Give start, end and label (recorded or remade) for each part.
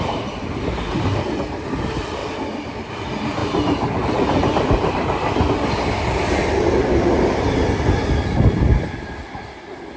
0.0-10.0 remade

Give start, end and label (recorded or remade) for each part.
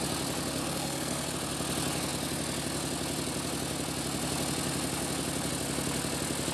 0.0-0.6 recorded; 0.6-1.3 remade; 1.3-6.5 recorded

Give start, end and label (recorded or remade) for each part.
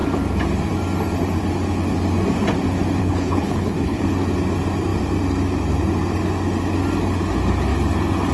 0.0-3.0 recorded; 3.0-4.0 remade; 4.0-8.3 recorded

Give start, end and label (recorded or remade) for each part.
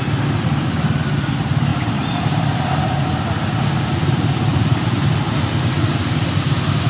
0.0-1.7 recorded; 1.7-3.0 remade; 3.0-4.5 recorded; 4.5-5.1 remade; 5.1-6.9 recorded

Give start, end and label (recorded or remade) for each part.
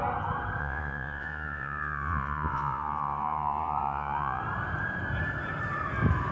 0.0-0.6 recorded; 0.6-4.4 remade; 4.4-6.3 recorded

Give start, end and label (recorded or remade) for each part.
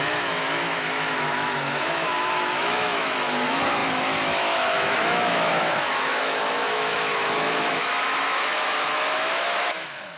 0.0-10.2 remade